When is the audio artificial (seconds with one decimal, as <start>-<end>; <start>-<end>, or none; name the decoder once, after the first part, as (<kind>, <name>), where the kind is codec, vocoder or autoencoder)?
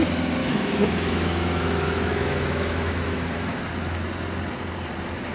0.4-3.6 (autoencoder, DAC-VAE)